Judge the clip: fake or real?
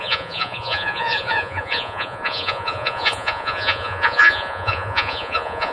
fake